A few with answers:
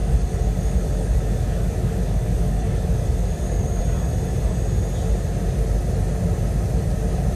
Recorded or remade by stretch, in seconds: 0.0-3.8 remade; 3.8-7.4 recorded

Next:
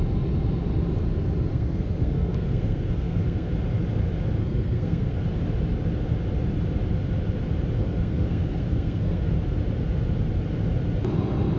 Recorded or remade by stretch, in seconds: 0.0-1.5 recorded; 1.5-3.5 remade; 3.5-4.4 recorded; 4.4-5.2 remade; 5.2-7.8 recorded; 7.8-9.3 remade; 9.3-11.6 recorded

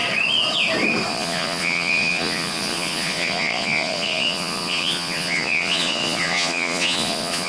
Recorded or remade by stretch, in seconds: 0.0-1.1 recorded; 1.1-7.5 remade

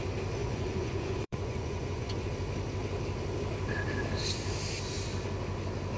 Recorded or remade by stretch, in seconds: 0.0-0.4 recorded; 0.4-2.3 remade; 2.3-6.0 recorded

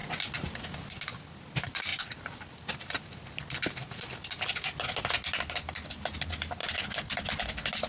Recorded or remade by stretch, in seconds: 0.0-0.9 remade; 0.9-1.9 recorded; 1.9-3.0 remade; 3.0-6.6 recorded; 6.6-7.2 remade; 7.2-7.9 recorded

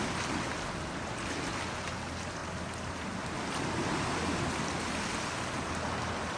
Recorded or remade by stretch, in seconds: 0.0-6.4 recorded

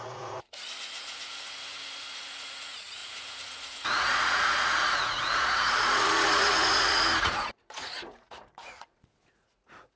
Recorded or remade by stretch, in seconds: 0.0-10.0 remade